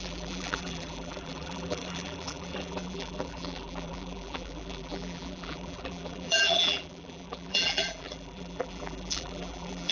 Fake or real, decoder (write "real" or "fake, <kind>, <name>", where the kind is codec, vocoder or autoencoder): fake, vocoder, BigVGAN v2